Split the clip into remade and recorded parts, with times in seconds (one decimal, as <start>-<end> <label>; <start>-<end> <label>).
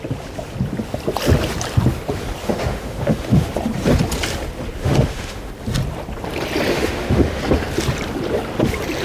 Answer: 0.0-2.4 recorded; 2.4-3.5 remade; 3.5-4.8 recorded; 4.8-5.5 remade; 5.5-6.7 recorded; 6.7-7.4 remade; 7.4-9.0 recorded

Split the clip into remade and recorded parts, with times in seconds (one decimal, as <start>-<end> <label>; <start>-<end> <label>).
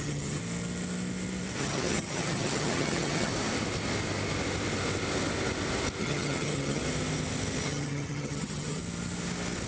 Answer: 0.0-0.4 remade; 0.4-1.6 recorded; 1.6-3.3 remade; 3.3-6.0 recorded; 6.0-6.8 remade; 6.8-7.6 recorded; 7.6-8.8 remade; 8.8-9.7 recorded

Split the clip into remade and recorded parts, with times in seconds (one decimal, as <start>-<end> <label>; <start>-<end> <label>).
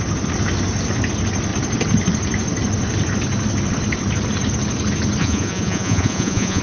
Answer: 0.0-5.2 recorded; 5.2-6.6 remade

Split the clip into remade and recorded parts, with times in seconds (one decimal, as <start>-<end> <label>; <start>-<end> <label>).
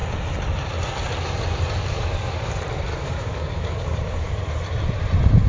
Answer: 0.0-1.8 recorded; 1.8-2.5 remade; 2.5-2.9 recorded; 2.9-4.4 remade; 4.4-5.5 recorded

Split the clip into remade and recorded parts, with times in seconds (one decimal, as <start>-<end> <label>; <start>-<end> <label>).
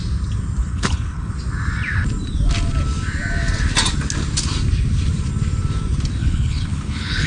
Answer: 0.0-0.6 recorded; 0.6-1.3 remade; 1.3-6.2 recorded; 6.2-7.3 remade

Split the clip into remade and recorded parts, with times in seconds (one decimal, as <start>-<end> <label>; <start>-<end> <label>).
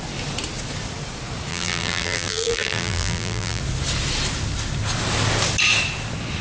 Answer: 0.0-1.5 recorded; 1.5-3.6 remade; 3.6-6.4 recorded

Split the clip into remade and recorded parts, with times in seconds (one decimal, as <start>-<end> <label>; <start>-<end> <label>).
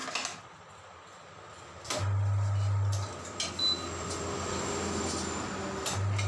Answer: 0.0-6.3 recorded